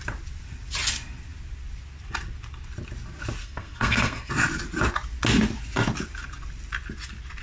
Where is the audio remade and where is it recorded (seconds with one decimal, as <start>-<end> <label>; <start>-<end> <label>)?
0.0-3.4 recorded; 3.4-4.3 remade; 4.3-7.4 recorded